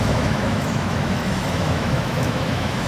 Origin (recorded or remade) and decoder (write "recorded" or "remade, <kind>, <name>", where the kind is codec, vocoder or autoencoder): remade, autoencoder, DAC-VAE